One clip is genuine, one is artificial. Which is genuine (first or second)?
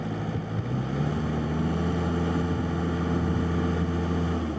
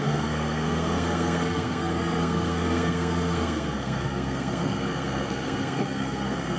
first